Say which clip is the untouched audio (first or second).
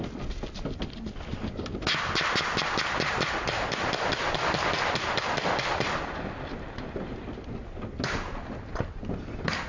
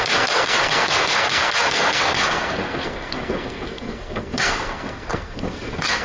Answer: first